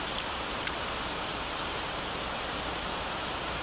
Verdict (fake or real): fake